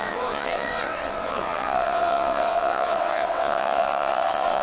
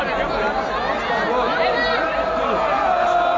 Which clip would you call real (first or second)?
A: second